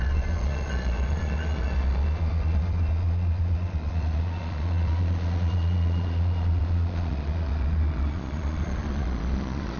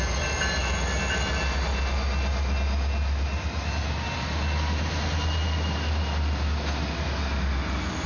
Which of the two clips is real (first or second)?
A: second